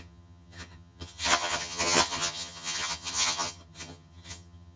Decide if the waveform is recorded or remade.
remade